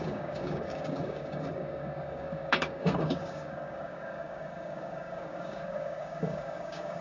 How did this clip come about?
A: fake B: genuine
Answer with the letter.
A